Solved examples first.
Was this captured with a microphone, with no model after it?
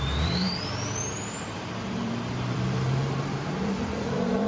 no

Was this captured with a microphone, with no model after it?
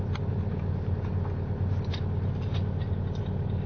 yes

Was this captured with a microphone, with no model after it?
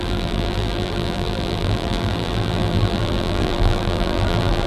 no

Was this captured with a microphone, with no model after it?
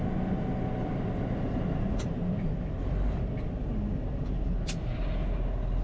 yes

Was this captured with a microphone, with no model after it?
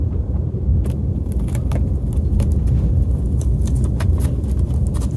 no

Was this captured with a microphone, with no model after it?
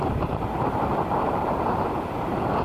no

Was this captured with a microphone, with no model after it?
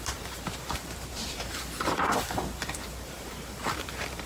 no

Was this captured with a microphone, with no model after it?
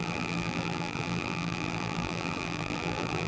no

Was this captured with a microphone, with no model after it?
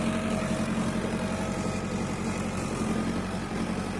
yes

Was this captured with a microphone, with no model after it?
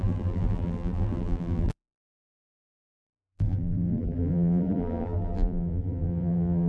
no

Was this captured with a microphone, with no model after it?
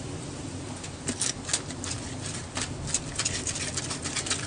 yes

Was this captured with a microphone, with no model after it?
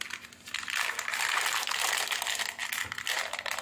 yes